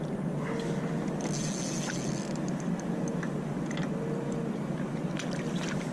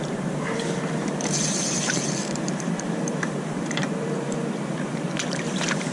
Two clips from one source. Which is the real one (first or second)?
first